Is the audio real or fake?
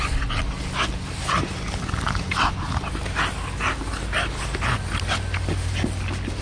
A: real